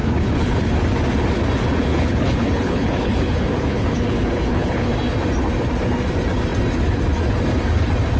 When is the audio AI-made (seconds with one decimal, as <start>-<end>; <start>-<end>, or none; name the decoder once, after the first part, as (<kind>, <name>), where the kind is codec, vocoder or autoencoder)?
0.0-0.7 (codec, HILCodec); 1.9-4.9